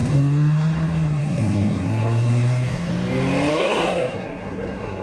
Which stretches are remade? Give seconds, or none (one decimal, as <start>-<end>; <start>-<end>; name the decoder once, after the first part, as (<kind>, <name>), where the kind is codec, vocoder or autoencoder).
0.0-2.9 (codec, SNAC); 3.5-5.0